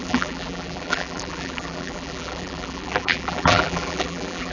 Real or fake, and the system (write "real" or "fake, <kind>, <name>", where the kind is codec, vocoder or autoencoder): fake, vocoder, BigVGAN v2